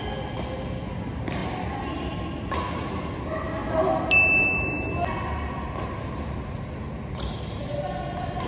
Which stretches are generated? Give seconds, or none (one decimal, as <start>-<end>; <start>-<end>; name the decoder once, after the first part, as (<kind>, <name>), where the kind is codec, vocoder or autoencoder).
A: none